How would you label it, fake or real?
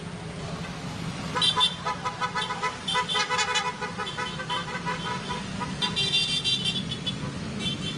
real